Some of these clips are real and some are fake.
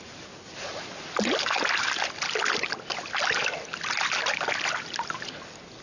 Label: real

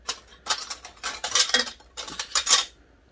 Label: real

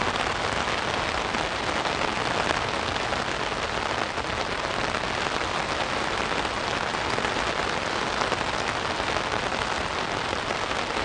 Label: real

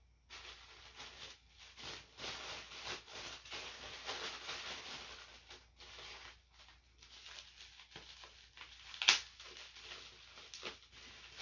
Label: real